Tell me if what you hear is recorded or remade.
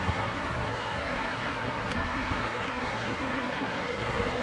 remade